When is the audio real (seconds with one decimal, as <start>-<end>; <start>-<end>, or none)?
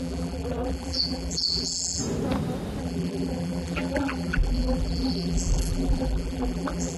2.0-2.8